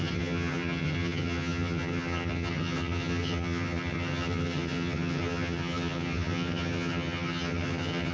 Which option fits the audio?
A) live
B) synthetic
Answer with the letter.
B